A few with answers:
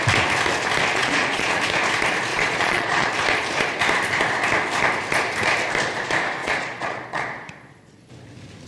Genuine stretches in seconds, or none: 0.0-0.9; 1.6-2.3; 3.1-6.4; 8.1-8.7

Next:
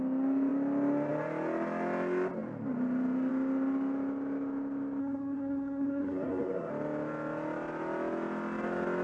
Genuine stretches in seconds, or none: 0.0-5.0; 6.7-9.0